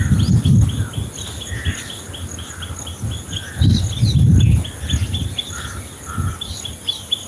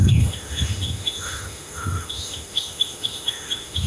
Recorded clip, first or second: first